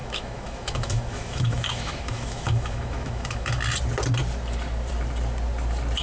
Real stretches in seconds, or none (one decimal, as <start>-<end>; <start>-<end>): 3.6-6.0